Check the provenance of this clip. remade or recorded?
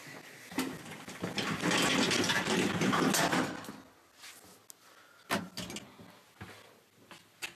recorded